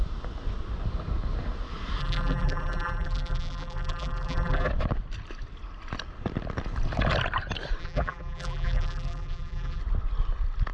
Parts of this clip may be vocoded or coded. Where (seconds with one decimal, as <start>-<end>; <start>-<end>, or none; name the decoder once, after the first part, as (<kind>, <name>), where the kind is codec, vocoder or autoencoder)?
2.0-4.7 (vocoder, BigVGAN v2); 7.8-9.8

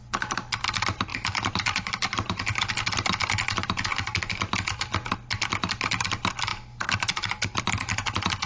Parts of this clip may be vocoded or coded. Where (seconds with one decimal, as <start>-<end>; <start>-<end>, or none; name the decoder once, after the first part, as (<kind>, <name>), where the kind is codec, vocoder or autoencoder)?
1.1-2.7 (vocoder, BigVGAN v2); 3.9-4.5; 6.5-7.6

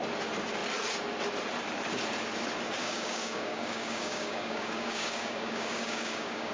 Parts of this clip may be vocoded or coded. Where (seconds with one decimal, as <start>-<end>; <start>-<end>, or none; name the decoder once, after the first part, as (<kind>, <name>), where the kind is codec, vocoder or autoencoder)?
2.8-6.5 (codec, DAC)

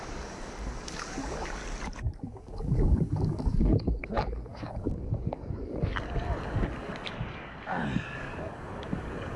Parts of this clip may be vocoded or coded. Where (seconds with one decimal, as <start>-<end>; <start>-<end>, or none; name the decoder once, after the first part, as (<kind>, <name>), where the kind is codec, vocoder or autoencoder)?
0.0-1.6 (codec, DAC); 2.2-9.4

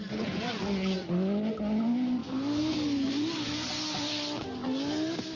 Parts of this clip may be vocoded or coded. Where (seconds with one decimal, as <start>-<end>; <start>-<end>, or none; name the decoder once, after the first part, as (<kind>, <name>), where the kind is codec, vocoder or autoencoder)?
none

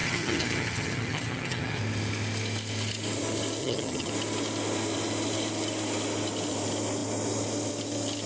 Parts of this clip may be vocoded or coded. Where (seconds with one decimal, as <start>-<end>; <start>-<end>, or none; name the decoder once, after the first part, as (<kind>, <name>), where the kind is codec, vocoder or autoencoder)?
0.0-1.8 (vocoder, HiFi-GAN); 3.6-4.1

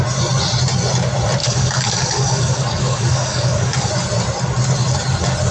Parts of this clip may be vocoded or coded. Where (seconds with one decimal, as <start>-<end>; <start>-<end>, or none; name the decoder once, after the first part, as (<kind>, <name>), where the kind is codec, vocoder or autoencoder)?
1.4-3.9 (codec, DAC)